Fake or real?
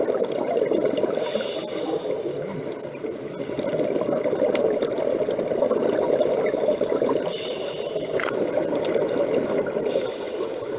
real